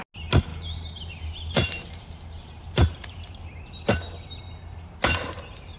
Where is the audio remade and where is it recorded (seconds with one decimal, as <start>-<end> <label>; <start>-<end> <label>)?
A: 0.0-0.5 recorded; 0.5-3.3 remade; 3.3-5.8 recorded